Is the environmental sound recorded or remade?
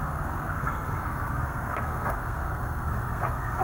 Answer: remade